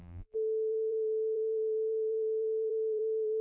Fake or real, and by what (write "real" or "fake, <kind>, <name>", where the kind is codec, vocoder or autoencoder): fake, vocoder, BigVGAN v2